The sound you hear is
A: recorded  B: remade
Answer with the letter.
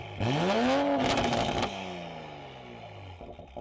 A